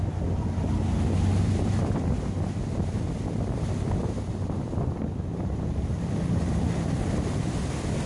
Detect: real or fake real